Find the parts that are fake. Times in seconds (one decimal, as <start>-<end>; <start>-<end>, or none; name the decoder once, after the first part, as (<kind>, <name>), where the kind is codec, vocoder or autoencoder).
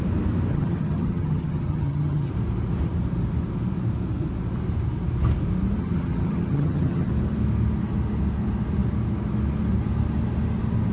0.5-2.3 (vocoder, HiFi-GAN); 5.8-7.1